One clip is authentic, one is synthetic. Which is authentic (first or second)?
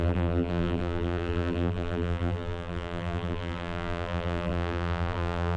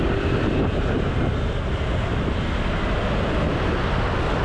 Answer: second